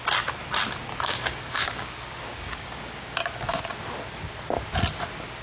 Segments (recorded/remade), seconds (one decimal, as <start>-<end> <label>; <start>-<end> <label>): 0.0-0.9 recorded; 0.9-3.6 remade; 3.6-5.4 recorded